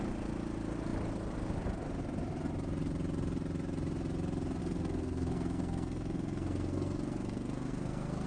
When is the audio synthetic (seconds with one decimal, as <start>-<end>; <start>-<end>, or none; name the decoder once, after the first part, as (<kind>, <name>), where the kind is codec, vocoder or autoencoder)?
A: 4.6-8.3 (codec, SNAC)